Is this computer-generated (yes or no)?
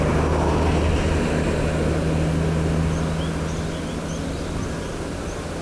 no